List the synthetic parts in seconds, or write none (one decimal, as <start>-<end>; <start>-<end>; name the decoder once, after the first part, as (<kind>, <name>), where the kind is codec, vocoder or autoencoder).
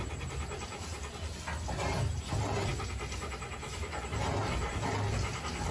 none